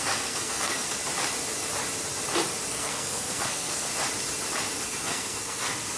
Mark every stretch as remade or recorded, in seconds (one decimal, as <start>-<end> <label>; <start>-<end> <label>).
0.0-1.0 remade; 1.0-2.7 recorded; 2.7-3.9 remade; 3.9-4.8 recorded; 4.8-6.0 remade